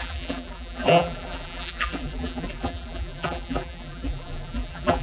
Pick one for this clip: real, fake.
fake